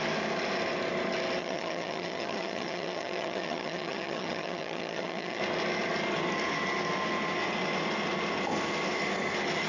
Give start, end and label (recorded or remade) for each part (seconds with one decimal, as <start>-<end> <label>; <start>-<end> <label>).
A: 0.0-1.4 recorded; 1.4-5.4 remade; 5.4-9.7 recorded